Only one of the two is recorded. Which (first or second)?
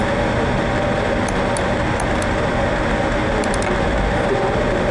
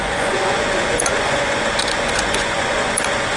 first